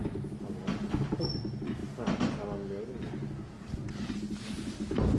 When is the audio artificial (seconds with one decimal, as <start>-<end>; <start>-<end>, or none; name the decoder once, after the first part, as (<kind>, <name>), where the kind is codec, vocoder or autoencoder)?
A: none